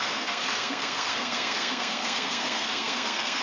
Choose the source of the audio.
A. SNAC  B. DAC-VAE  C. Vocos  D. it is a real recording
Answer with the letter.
A